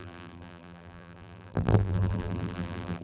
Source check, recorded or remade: remade